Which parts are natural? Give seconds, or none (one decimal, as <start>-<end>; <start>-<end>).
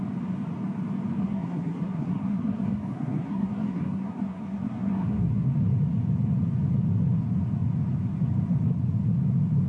0.0-1.2; 5.5-9.7